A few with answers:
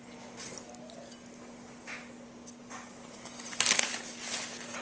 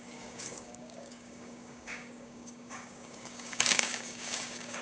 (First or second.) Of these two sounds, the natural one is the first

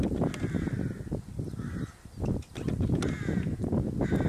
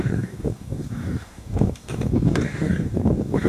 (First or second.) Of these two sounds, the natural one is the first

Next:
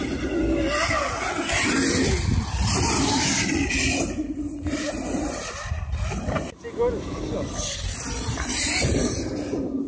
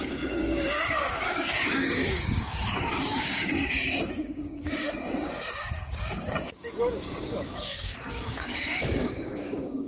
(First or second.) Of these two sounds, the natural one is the first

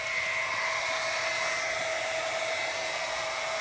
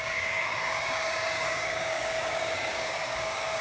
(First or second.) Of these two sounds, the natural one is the first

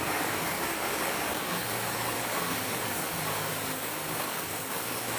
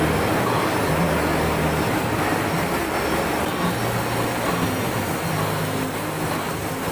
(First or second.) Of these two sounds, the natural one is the second